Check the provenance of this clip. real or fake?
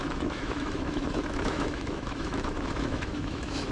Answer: fake